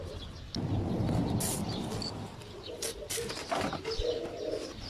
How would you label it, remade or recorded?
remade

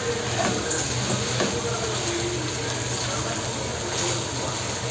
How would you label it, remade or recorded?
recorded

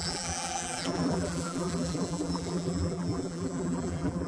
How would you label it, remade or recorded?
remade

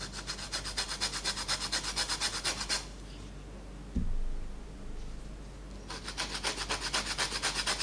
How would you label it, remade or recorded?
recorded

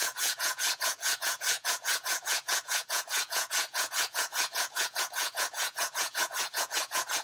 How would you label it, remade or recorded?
remade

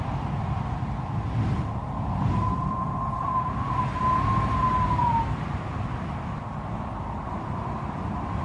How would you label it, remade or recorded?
recorded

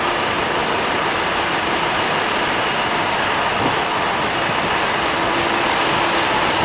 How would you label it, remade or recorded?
recorded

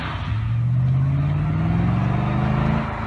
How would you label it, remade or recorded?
recorded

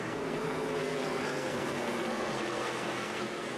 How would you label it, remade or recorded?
remade